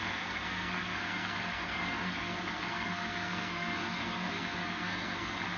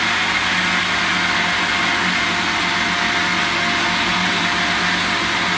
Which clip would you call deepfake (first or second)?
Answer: first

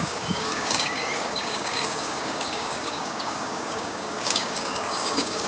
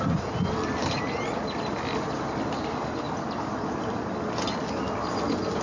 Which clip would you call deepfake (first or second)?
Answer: first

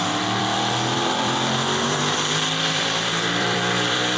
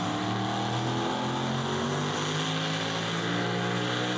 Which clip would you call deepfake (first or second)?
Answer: first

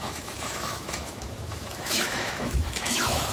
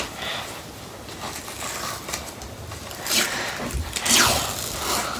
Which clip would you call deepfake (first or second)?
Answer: first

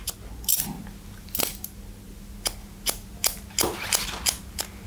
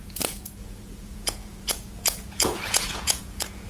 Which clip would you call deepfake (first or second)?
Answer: second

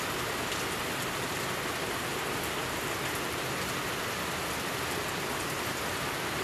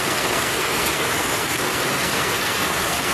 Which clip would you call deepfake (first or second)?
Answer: second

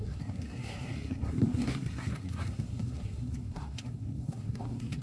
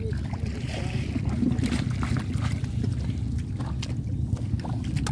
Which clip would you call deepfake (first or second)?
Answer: first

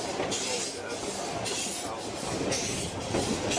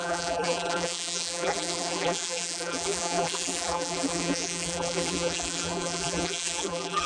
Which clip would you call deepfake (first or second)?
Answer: second